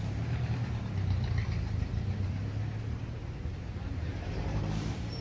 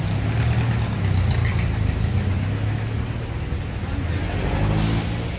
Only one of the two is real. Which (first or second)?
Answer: second